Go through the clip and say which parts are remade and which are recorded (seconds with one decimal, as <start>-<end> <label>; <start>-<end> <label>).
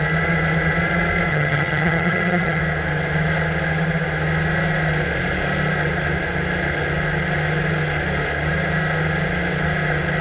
0.0-1.3 recorded; 1.3-2.6 remade; 2.6-10.2 recorded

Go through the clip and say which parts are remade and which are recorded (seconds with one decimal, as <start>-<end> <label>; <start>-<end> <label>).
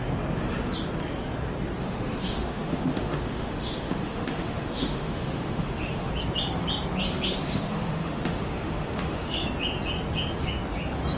0.0-1.8 recorded; 1.8-6.1 remade; 6.1-7.0 recorded; 7.0-9.4 remade; 9.4-11.2 recorded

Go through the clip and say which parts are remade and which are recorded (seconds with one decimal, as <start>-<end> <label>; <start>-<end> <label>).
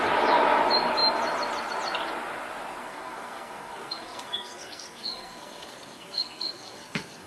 0.0-2.8 recorded; 2.8-7.3 remade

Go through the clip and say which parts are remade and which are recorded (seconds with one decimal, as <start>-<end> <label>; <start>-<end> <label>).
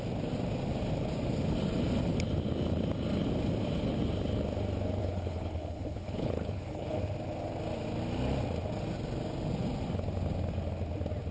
0.0-5.0 recorded; 5.0-7.0 remade; 7.0-11.3 recorded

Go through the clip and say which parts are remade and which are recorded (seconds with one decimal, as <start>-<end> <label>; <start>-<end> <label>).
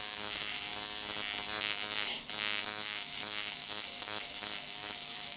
0.0-0.7 remade; 0.7-2.6 recorded; 2.6-5.4 remade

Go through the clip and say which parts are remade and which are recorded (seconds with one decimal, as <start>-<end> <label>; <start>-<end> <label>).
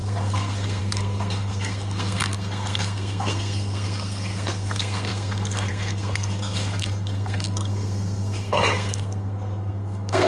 0.0-10.3 remade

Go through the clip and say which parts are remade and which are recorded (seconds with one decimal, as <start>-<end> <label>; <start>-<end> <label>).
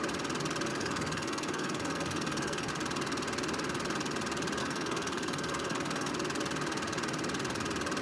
0.0-0.7 recorded; 0.7-2.7 remade; 2.7-4.6 recorded; 4.6-6.1 remade; 6.1-8.0 recorded